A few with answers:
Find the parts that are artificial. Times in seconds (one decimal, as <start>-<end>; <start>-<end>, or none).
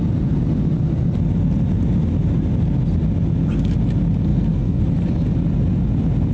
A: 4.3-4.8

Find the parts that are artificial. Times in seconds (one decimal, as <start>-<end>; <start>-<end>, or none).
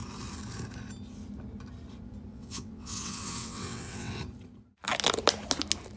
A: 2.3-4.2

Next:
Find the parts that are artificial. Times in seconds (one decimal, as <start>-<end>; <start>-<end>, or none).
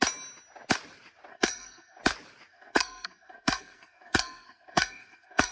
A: 1.3-2.0; 2.5-5.5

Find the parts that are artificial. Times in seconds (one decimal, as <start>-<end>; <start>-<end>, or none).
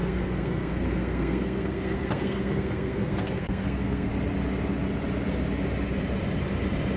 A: 0.0-4.1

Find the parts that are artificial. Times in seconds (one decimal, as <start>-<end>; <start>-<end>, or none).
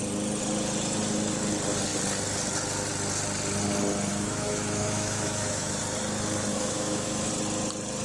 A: 4.1-5.8; 6.5-7.3